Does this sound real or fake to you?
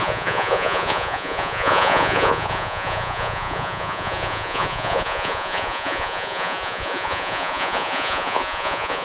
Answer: fake